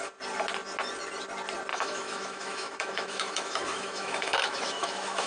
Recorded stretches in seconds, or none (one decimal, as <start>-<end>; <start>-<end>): 0.0-1.7

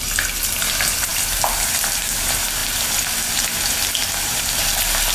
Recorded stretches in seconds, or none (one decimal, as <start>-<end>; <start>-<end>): 0.0-5.1

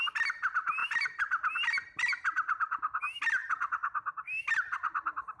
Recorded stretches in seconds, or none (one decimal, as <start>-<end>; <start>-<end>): 0.0-5.4

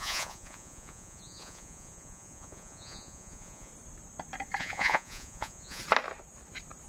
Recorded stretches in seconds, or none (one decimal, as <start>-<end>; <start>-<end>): 3.7-4.6; 5.8-6.9

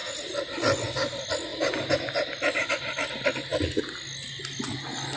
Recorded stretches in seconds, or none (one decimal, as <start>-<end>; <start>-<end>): 0.0-5.2

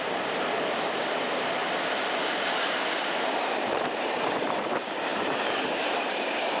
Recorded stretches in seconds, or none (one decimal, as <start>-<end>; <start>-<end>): 1.6-3.0